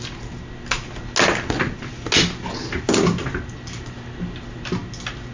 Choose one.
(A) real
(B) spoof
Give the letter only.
A